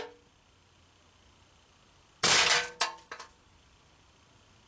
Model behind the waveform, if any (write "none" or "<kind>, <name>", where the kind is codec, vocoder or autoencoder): none